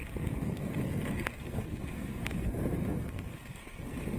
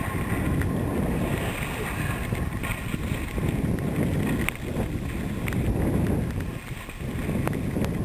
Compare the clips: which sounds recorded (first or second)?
second